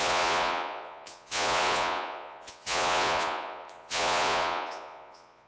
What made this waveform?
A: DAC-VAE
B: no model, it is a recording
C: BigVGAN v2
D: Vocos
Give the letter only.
D